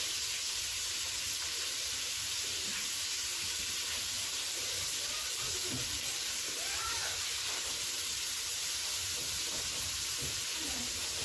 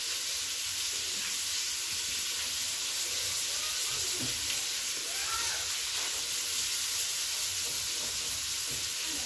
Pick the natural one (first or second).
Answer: second